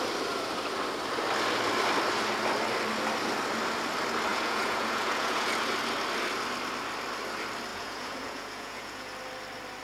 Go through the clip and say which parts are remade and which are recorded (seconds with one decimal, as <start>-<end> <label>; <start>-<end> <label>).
0.0-4.3 recorded; 4.3-5.5 remade; 5.5-7.7 recorded; 7.7-9.1 remade; 9.1-9.8 recorded